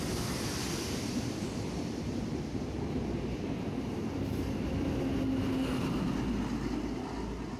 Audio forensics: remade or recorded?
recorded